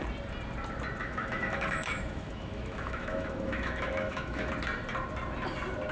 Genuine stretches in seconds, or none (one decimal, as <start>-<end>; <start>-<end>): 0.0-1.0; 4.5-5.9